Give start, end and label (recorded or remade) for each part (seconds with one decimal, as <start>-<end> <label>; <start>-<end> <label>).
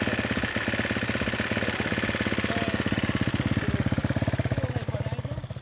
0.0-5.6 recorded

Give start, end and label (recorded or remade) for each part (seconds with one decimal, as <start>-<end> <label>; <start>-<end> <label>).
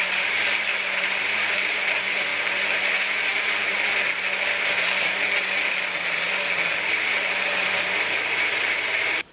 0.0-2.3 remade; 2.3-7.2 recorded; 7.2-9.3 remade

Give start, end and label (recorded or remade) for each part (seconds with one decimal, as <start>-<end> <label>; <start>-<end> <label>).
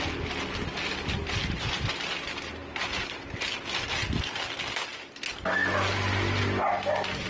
0.0-7.3 recorded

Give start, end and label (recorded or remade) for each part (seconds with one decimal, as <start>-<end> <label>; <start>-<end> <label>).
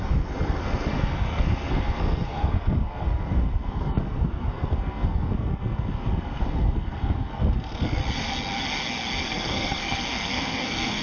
0.0-8.0 remade; 8.0-9.2 recorded; 9.2-11.0 remade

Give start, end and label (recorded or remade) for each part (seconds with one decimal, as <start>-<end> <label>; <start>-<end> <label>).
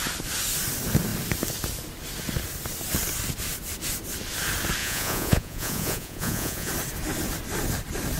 0.0-4.8 recorded; 4.8-6.7 remade; 6.7-8.2 recorded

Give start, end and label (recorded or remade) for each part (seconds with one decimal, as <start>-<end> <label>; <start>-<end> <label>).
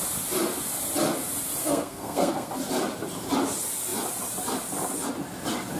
0.0-1.6 recorded; 1.6-2.5 remade; 2.5-5.8 recorded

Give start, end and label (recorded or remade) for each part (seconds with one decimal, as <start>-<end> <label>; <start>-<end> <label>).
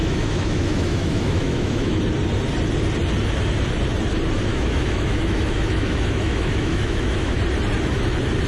0.0-2.0 remade; 2.0-4.5 recorded; 4.5-7.4 remade; 7.4-8.5 recorded